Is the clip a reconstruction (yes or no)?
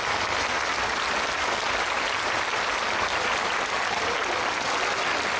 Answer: no